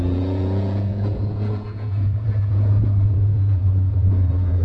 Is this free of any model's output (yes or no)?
no